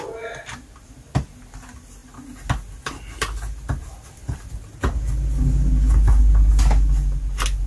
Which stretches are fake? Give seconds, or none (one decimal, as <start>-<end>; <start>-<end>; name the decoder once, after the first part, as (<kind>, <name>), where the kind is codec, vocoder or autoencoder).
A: none